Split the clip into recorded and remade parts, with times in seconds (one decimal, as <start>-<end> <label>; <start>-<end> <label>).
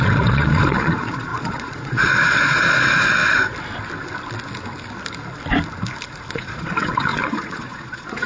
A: 0.0-3.2 remade; 3.2-6.3 recorded; 6.3-8.3 remade